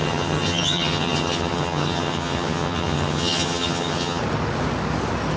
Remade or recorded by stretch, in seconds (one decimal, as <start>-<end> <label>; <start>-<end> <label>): 0.0-4.2 remade; 4.2-5.4 recorded